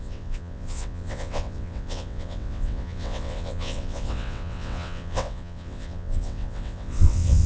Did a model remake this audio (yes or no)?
yes